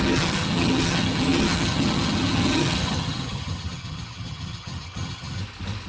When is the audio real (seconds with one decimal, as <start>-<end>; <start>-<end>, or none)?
5.4-5.9